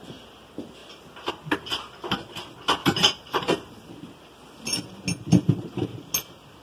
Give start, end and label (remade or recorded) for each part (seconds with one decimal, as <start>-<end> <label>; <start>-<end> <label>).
0.0-2.8 recorded; 2.8-3.9 remade; 3.9-5.4 recorded; 5.4-6.1 remade; 6.1-6.6 recorded

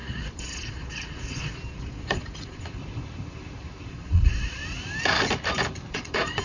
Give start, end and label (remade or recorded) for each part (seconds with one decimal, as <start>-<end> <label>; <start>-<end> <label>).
0.0-2.8 remade; 2.8-3.9 recorded; 3.9-4.6 remade; 4.6-5.9 recorded; 5.9-6.4 remade

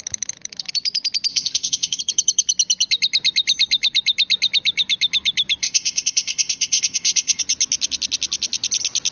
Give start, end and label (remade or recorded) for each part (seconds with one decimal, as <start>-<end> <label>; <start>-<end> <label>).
0.0-1.3 recorded; 1.3-2.0 remade; 2.0-5.6 recorded; 5.6-7.4 remade; 7.4-9.1 recorded

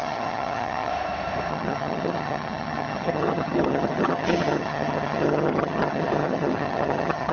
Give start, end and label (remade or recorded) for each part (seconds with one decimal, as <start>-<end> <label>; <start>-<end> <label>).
0.0-0.9 remade; 0.9-1.5 recorded; 1.5-7.3 remade

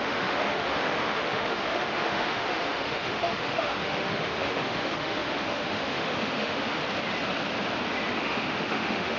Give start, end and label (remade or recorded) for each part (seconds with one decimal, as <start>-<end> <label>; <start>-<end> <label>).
0.0-6.8 remade; 6.8-8.2 recorded; 8.2-9.2 remade

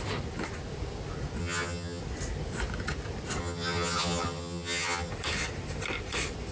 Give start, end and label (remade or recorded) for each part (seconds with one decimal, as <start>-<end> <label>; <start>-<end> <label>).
0.0-1.4 recorded; 1.4-2.0 remade; 2.0-3.4 recorded; 3.4-5.1 remade; 5.1-6.5 recorded

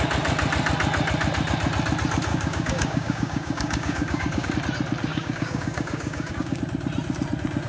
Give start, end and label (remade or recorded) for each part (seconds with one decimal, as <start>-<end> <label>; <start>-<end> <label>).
0.0-2.3 recorded; 2.3-4.5 remade; 4.5-5.1 recorded; 5.1-6.6 remade; 6.6-7.7 recorded